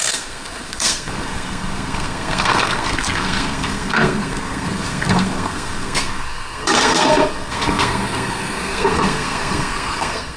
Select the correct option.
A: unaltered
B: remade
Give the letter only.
B